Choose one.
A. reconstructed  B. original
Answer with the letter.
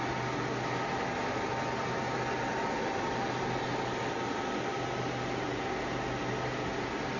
B